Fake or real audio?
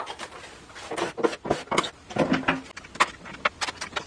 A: real